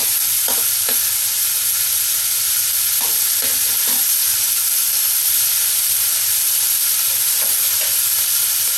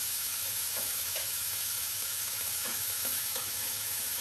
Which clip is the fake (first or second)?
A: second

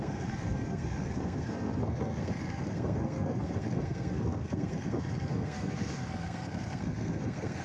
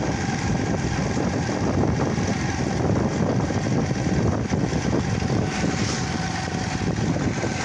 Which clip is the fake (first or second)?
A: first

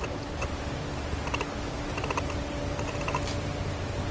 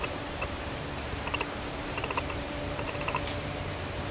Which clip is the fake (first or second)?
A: second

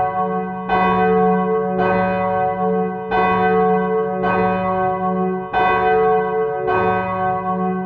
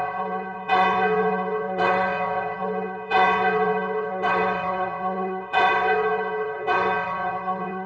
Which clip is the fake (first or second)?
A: second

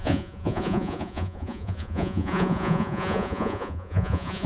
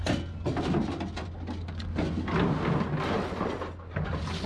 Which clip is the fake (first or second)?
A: first